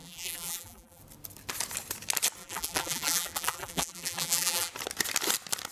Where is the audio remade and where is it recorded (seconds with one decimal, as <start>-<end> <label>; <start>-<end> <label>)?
0.0-1.0 remade; 1.0-2.4 recorded; 2.4-4.7 remade; 4.7-5.7 recorded